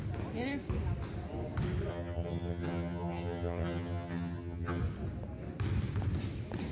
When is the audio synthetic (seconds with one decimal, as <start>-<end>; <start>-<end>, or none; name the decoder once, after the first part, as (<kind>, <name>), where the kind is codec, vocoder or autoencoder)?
1.9-4.8 (vocoder, HiFi-GAN)